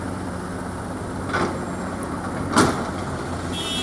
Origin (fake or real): real